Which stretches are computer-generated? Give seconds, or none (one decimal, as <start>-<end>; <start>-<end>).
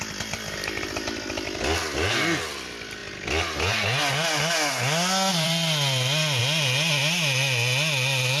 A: 5.3-6.4